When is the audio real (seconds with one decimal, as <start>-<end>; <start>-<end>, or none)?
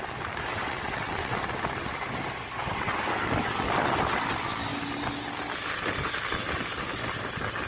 0.0-0.5; 1.4-7.7